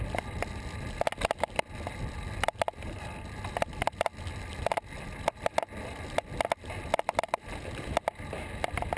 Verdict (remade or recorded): recorded